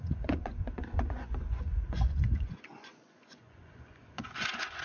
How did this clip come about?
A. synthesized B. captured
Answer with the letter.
A